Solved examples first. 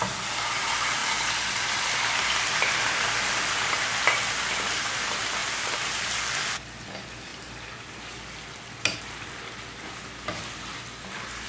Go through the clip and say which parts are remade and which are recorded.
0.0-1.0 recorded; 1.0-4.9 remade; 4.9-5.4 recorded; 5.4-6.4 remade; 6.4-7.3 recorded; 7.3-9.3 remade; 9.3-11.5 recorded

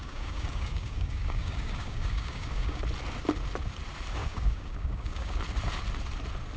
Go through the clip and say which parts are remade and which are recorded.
0.0-2.8 remade; 2.8-4.2 recorded; 4.2-5.4 remade; 5.4-6.6 recorded

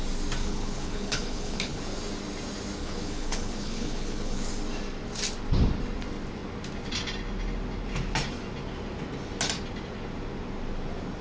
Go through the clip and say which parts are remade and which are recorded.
0.0-0.4 recorded; 0.4-1.8 remade; 1.8-2.8 recorded; 2.8-4.5 remade; 4.5-11.2 recorded

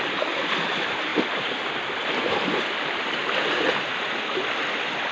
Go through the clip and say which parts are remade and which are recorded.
0.0-5.1 recorded

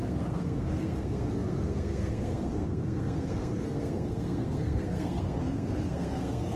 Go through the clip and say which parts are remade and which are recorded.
0.0-6.6 remade

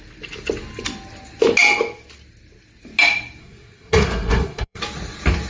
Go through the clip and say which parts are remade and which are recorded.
0.0-3.4 recorded; 3.4-4.8 remade; 4.8-5.5 recorded

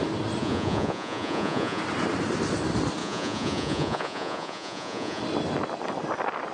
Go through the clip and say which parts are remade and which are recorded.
0.0-0.4 recorded; 0.4-1.8 remade; 1.8-3.0 recorded; 3.0-5.2 remade; 5.2-6.5 recorded